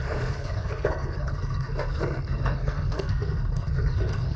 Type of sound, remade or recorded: remade